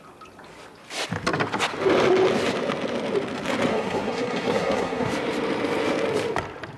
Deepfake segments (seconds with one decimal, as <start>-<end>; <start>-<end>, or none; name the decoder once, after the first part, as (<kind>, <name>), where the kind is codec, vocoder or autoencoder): 3.7-5.1 (codec, SNAC)